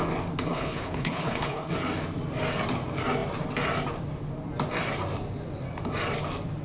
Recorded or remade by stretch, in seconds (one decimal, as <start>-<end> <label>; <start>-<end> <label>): 0.0-0.5 recorded; 0.5-1.7 remade; 1.7-6.6 recorded

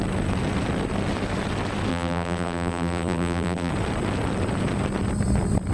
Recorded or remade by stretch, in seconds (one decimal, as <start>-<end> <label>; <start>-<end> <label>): 0.0-1.9 recorded; 1.9-3.7 remade; 3.7-5.7 recorded

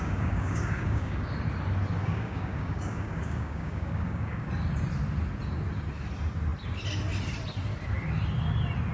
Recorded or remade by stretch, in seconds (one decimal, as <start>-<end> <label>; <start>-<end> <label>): 0.0-1.3 remade; 1.3-2.0 recorded; 2.0-4.5 remade; 4.5-8.9 recorded

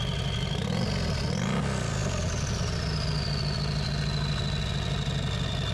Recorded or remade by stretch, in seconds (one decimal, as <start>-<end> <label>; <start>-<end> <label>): 0.0-5.7 recorded